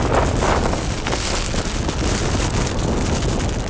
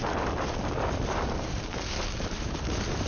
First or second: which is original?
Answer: first